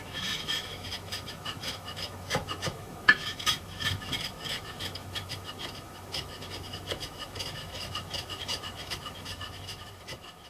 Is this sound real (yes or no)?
no